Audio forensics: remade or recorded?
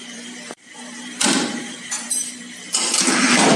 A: remade